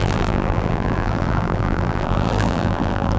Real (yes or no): no